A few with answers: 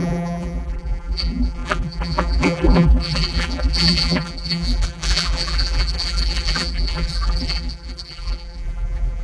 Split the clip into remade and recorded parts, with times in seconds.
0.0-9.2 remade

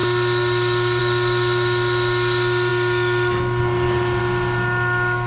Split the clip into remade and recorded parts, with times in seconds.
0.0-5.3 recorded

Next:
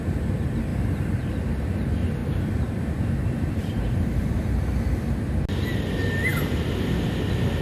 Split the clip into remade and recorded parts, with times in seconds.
0.0-0.7 recorded; 0.7-1.3 remade; 1.3-2.2 recorded; 2.2-4.6 remade; 4.6-7.6 recorded